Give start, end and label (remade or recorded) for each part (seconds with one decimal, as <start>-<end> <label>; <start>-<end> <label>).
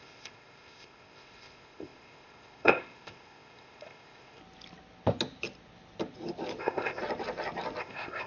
0.0-4.4 remade; 4.4-6.6 recorded; 6.6-7.0 remade; 7.0-7.8 recorded; 7.8-8.3 remade